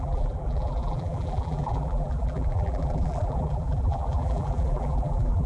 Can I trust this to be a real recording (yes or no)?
no